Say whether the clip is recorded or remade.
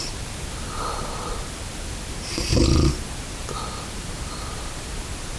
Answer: recorded